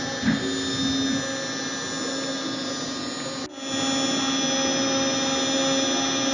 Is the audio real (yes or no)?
yes